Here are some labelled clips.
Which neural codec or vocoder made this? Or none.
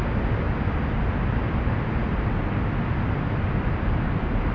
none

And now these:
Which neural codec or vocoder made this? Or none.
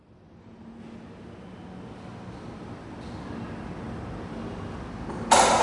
none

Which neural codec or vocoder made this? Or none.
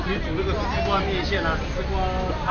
none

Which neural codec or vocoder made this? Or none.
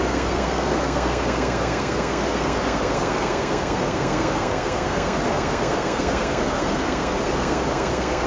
codec, SNAC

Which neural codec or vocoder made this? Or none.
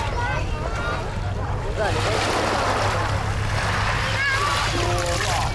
none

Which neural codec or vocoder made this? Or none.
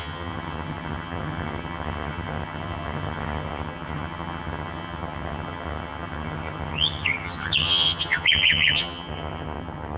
vocoder, HiFi-GAN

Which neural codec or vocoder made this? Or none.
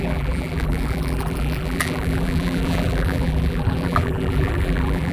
vocoder, BigVGAN v2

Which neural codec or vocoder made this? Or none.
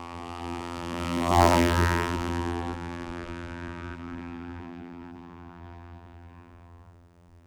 vocoder, BigVGAN v2